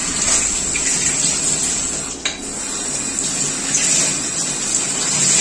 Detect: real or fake real